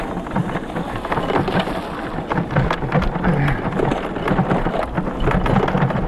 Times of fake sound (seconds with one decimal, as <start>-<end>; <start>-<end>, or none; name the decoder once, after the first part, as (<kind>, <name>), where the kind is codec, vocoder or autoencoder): none